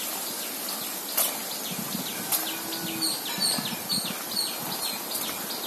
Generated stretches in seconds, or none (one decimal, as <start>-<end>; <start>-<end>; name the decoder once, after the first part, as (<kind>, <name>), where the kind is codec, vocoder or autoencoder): none